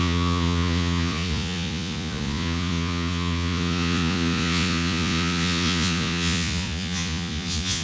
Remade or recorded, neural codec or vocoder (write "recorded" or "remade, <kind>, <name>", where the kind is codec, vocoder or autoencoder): remade, vocoder, Vocos